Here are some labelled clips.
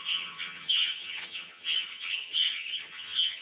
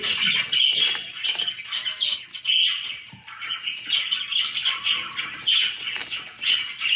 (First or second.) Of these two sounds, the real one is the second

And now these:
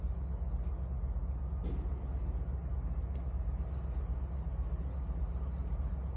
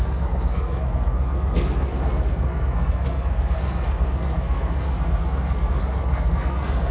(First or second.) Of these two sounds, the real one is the first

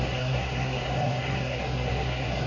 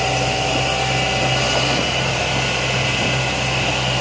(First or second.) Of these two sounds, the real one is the second